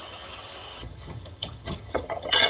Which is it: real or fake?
fake